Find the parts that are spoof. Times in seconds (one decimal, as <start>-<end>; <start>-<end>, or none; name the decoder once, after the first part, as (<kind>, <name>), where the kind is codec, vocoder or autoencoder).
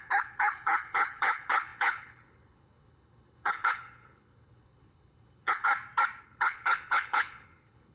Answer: 0.0-5.7 (codec, HILCodec); 6.2-7.9